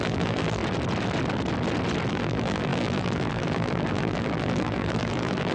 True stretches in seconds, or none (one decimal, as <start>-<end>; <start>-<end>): 0.6-2.1